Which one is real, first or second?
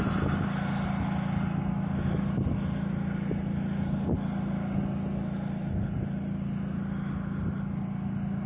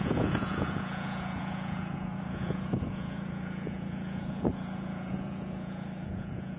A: first